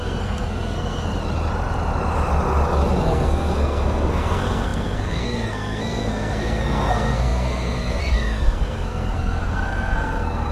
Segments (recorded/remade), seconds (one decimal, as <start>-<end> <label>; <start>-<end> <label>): 0.0-1.1 remade; 1.1-3.0 recorded; 3.0-10.5 remade